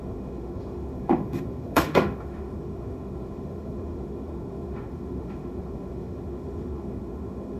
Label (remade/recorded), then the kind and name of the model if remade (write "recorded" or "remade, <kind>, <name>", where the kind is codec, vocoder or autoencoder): remade, autoencoder, DAC-VAE